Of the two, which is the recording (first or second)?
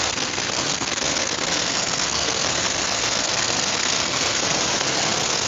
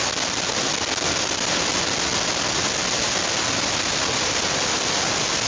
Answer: second